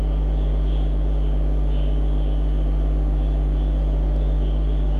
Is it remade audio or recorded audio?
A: recorded